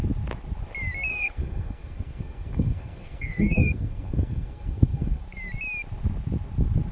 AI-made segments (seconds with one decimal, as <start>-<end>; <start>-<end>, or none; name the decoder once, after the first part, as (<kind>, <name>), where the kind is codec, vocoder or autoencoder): 1.1-5.2 (codec, SNAC)

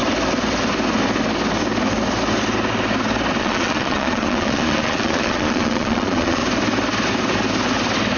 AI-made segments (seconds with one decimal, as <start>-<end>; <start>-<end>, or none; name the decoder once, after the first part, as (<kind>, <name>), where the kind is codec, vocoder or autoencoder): 3.4-6.4 (vocoder, Vocos)

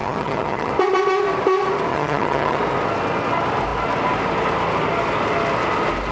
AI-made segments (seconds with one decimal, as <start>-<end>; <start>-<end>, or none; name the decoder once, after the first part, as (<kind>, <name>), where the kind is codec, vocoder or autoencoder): 0.0-0.7 (vocoder, HiFi-GAN); 1.9-2.6

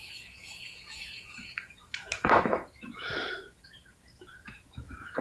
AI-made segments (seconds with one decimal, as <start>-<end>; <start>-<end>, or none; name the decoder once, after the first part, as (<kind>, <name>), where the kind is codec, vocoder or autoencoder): 0.0-5.2 (autoencoder, DAC-VAE)

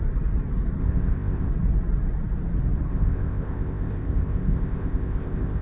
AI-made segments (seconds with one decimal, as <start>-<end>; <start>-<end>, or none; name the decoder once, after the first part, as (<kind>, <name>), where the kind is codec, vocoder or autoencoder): 0.8-1.5 (codec, ZipCodec); 2.9-5.6

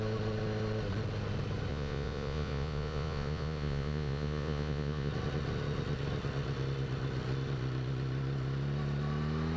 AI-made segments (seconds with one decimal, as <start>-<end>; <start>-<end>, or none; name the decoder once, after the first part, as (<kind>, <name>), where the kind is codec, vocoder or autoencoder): 1.7-5.1 (vocoder, Vocos)

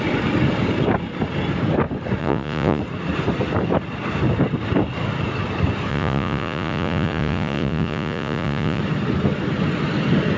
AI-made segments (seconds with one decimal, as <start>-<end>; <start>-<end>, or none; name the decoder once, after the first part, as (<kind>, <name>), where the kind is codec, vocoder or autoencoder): 2.2-2.8 (vocoder, Vocos); 5.9-8.8

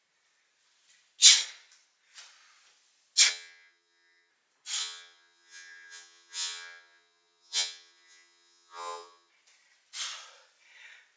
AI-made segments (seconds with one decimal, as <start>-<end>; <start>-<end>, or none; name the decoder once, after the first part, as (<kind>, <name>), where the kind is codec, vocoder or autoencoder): 3.3-4.3 (vocoder, HiFi-GAN); 4.8-9.3